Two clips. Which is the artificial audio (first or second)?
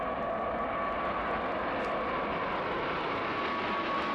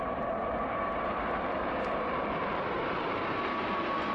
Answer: second